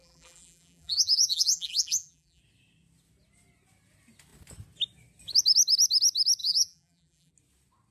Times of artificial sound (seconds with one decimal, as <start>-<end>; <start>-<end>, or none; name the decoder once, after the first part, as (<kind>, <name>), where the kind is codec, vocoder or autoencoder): 0.0-2.4 (vocoder, BigVGAN v2); 6.4-7.3